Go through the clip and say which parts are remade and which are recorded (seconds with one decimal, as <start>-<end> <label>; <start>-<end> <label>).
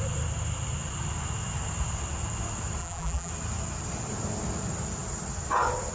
0.0-2.8 recorded; 2.8-3.3 remade; 3.3-5.9 recorded